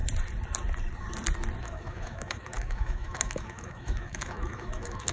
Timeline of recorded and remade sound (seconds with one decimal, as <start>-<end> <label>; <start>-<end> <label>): 0.0-1.6 recorded; 1.6-5.1 remade